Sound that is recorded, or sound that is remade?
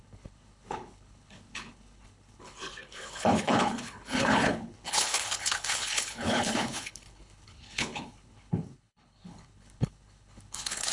remade